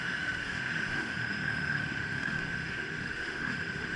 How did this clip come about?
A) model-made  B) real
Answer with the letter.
A